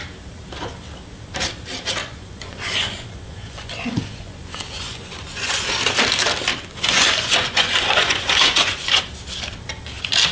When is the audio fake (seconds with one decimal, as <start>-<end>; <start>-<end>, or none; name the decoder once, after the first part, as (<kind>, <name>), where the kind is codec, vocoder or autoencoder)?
2.0-5.7 (vocoder, Vocos); 6.5-9.0